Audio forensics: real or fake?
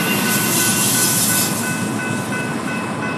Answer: real